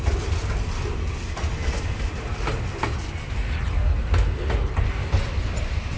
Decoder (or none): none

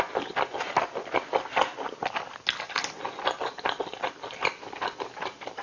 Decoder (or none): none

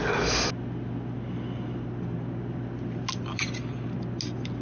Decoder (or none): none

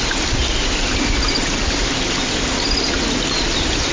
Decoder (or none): none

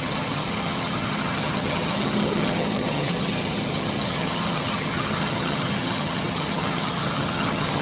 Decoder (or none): vocoder, HiFi-GAN